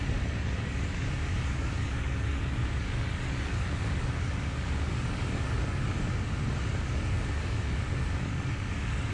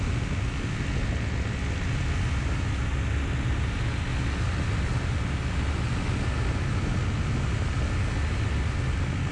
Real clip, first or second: second